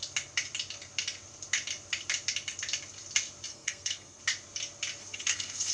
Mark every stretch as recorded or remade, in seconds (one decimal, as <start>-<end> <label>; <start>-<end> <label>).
0.0-3.5 recorded; 3.5-4.2 remade; 4.2-5.0 recorded; 5.0-5.7 remade